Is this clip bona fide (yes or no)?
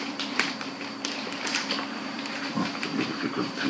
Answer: no